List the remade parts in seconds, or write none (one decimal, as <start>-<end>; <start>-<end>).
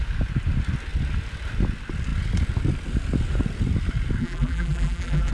4.2-5.3